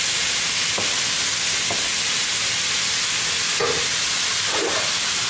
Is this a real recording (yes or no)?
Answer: yes